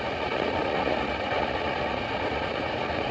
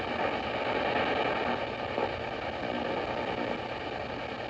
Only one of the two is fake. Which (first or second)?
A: first